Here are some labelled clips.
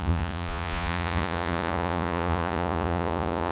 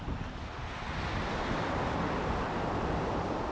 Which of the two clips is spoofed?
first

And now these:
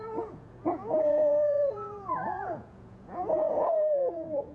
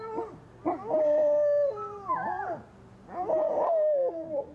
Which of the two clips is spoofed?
first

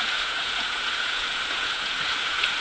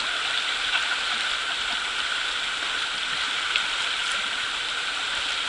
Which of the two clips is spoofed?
first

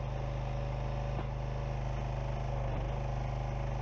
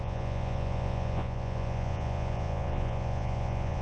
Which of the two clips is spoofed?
second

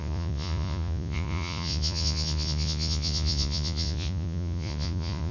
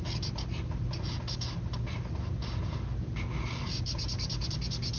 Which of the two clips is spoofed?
first